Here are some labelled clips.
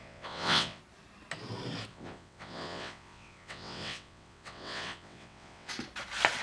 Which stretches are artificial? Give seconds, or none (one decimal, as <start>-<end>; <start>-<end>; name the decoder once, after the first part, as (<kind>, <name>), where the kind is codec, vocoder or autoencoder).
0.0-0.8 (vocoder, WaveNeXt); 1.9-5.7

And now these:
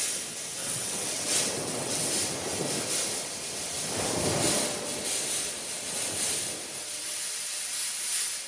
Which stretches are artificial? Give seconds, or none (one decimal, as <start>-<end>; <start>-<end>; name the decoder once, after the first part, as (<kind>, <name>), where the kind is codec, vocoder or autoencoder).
0.6-2.1 (vocoder, WaveNeXt)

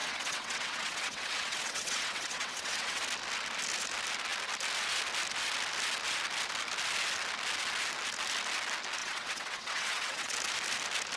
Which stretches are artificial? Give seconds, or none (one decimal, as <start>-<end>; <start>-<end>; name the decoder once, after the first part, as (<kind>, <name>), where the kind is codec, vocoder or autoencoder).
0.0-3.0 (vocoder, WaveNeXt); 9.0-10.3

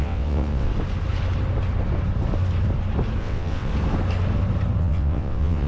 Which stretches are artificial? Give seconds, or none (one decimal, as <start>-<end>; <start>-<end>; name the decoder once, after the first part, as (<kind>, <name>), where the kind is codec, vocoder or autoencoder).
0.0-0.7 (vocoder, WaveNeXt); 3.2-3.7; 4.8-5.7

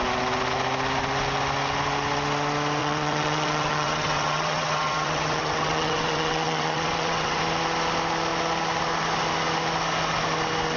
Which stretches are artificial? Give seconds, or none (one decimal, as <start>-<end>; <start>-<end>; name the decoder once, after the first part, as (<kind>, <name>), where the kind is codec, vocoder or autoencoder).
2.8-7.4 (vocoder, WaveNeXt)

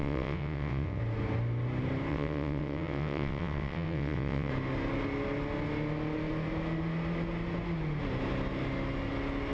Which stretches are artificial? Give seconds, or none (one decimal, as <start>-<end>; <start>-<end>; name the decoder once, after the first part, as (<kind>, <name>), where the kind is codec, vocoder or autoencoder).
0.0-1.0 (vocoder, WaveNeXt); 2.1-4.5

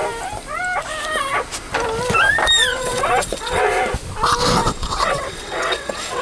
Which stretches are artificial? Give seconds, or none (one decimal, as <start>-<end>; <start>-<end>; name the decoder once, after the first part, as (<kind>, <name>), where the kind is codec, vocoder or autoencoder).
2.7-3.6 (vocoder, WaveNeXt); 4.6-6.2

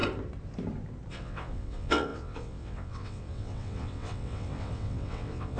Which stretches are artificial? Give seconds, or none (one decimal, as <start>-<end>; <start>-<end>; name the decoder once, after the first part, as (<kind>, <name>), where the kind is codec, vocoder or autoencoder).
1.1-5.6 (vocoder, WaveNeXt)